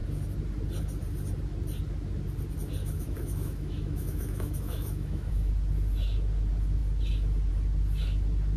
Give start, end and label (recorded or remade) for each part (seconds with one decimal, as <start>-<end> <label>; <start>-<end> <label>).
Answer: 0.0-2.8 recorded; 2.8-5.5 remade; 5.5-8.6 recorded